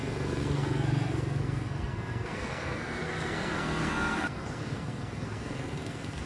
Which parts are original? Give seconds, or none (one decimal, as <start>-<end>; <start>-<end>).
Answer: none